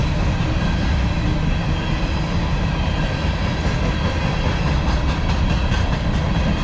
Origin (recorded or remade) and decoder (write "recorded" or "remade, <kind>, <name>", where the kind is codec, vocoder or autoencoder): recorded